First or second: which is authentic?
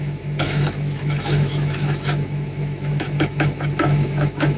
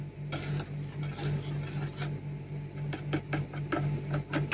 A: second